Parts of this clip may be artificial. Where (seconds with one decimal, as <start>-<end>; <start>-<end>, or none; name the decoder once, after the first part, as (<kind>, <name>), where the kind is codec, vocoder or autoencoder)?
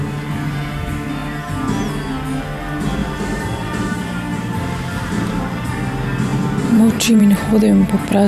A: 3.0-5.7 (vocoder, BigVGAN v2)